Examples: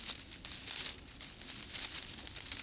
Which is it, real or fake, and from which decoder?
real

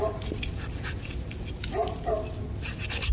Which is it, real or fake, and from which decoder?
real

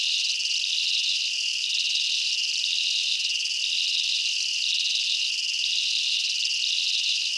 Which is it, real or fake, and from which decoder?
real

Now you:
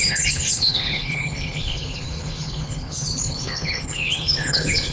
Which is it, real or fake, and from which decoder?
fake, codec, HILCodec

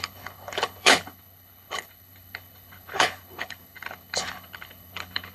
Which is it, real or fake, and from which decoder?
fake, codec, HILCodec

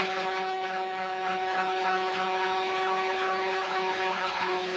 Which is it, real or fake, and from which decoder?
fake, codec, HILCodec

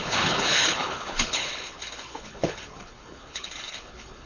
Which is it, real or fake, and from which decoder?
fake, codec, HILCodec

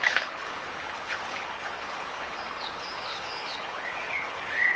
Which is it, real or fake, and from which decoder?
fake, codec, HILCodec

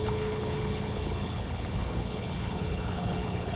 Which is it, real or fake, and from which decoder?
fake, codec, HILCodec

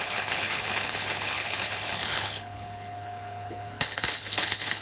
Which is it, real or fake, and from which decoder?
fake, codec, HILCodec